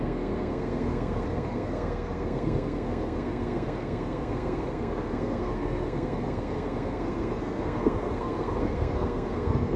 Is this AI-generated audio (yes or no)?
yes